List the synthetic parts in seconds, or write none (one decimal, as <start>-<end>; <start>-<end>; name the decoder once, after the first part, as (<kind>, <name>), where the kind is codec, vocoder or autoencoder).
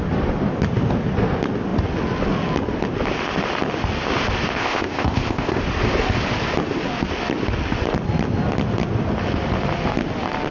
4.6-5.6 (codec, ZipCodec)